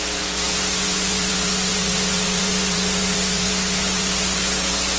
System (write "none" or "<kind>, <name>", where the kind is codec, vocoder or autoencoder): vocoder, Vocos